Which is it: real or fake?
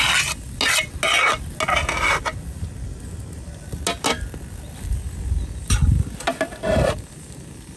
real